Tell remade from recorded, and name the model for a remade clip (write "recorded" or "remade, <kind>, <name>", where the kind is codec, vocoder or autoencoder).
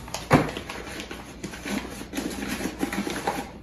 remade, vocoder, BigVGAN v2